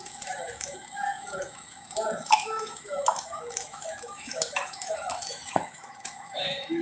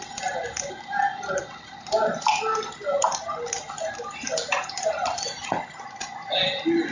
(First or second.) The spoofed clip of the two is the first